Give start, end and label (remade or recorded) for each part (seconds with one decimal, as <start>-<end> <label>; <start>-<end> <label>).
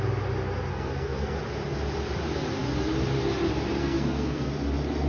0.0-0.7 recorded; 0.7-1.4 remade; 1.4-3.8 recorded; 3.8-4.5 remade; 4.5-5.1 recorded